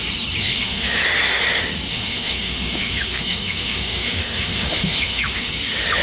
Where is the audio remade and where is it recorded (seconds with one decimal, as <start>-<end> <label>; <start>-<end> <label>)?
0.0-0.4 recorded; 0.4-1.0 remade; 1.0-1.9 recorded; 1.9-5.5 remade; 5.5-6.0 recorded